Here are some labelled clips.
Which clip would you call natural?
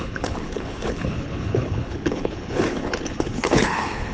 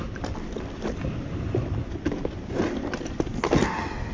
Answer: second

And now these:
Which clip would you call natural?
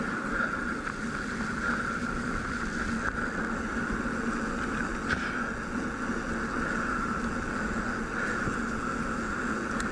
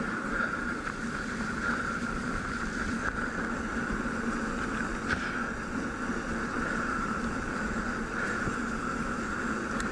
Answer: first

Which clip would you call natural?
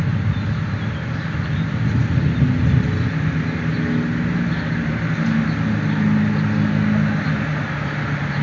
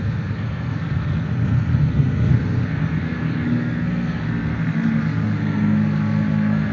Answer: first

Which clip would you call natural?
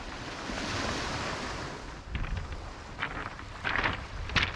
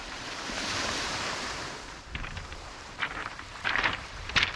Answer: first